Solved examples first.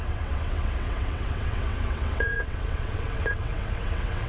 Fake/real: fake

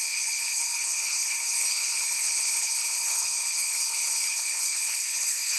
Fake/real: fake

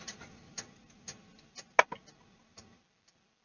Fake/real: real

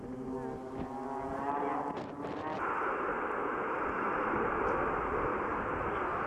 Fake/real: real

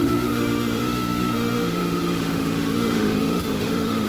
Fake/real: fake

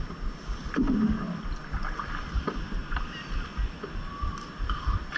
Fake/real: real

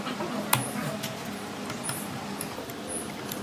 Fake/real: real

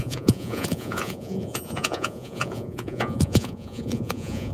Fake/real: fake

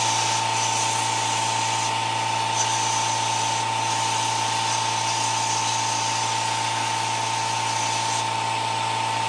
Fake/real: real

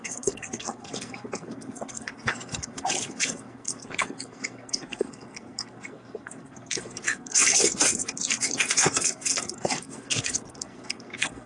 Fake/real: fake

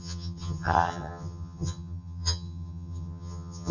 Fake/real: fake